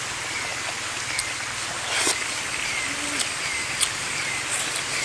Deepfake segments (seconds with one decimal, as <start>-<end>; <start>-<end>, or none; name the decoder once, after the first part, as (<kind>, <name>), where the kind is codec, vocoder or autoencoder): none